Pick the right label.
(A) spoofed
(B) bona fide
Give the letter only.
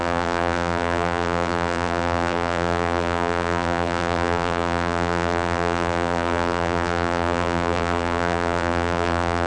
A